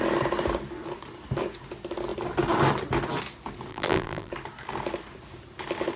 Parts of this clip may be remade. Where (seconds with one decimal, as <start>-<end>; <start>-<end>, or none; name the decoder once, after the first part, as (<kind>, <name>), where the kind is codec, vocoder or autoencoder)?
3.7-4.3 (vocoder, BigVGAN v2)